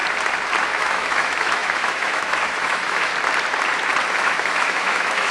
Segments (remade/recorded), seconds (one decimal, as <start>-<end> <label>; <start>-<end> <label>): 0.0-0.6 recorded; 0.6-3.1 remade; 3.1-4.1 recorded; 4.1-5.3 remade